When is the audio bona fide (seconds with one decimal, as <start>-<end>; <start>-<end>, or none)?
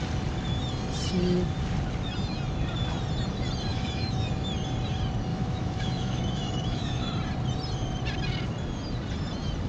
0.0-3.7; 4.3-5.3; 7.1-9.7